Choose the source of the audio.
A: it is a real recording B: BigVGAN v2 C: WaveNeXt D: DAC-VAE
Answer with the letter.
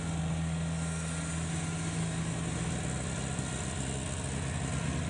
A